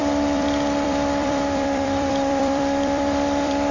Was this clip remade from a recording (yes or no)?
yes